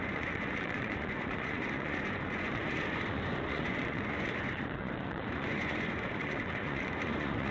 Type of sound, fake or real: fake